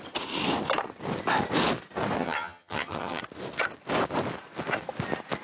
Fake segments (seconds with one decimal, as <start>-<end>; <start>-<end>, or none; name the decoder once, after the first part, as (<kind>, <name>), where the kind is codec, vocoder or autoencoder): 2.2-3.2 (vocoder, HiFi-GAN)